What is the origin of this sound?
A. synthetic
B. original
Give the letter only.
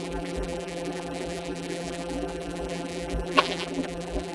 A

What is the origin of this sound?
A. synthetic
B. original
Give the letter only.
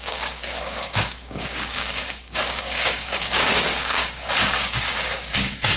A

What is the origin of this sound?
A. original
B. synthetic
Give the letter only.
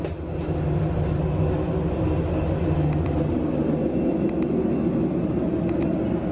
A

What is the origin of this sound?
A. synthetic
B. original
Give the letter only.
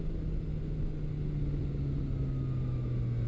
B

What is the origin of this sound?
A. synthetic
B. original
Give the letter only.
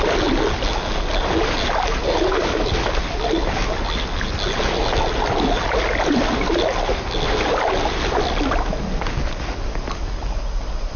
B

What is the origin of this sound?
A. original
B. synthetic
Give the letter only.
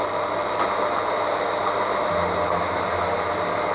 A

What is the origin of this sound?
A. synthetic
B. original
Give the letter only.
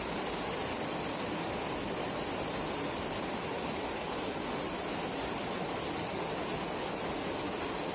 B